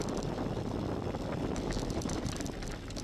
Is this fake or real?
real